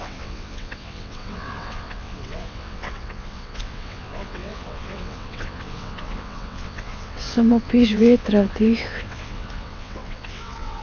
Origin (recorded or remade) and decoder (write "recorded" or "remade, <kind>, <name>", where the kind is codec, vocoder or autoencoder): remade, vocoder, WaveNeXt